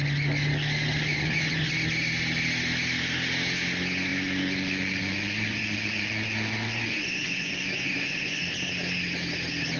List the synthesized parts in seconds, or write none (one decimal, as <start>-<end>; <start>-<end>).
1.1-1.7; 4.1-8.4